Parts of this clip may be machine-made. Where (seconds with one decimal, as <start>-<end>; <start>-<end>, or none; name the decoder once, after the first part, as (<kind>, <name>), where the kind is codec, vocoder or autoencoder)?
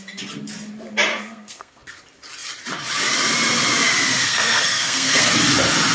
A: 1.1-2.0 (codec, SNAC); 4.2-5.3